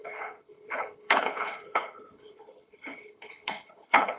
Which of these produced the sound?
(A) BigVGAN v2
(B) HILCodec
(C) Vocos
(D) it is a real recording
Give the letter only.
B